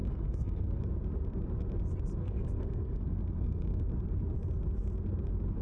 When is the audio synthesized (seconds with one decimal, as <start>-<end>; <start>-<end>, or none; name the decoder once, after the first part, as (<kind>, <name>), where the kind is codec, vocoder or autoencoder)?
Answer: 0.0-0.8 (codec, SNAC); 2.2-3.8